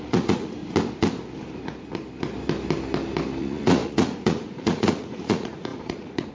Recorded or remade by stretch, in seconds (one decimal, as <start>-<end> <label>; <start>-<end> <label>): 0.0-0.6 remade; 0.6-3.4 recorded; 3.4-6.3 remade